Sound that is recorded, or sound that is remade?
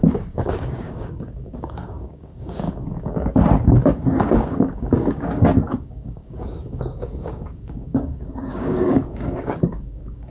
remade